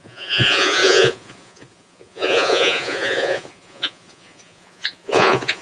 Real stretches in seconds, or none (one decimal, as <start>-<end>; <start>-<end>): none